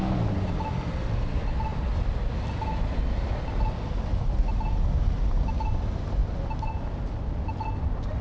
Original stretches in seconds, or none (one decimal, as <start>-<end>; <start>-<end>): 0.0-8.2